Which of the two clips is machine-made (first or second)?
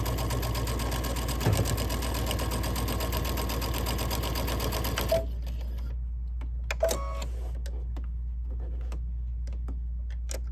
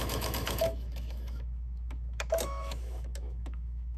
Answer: second